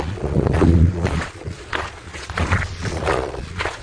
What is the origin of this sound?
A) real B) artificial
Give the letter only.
B